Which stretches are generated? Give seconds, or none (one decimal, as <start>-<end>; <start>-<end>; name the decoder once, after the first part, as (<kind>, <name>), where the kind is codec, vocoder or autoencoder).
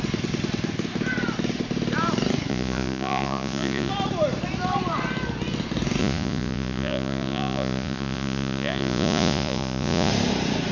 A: 2.5-3.9 (vocoder, Vocos); 6.0-10.1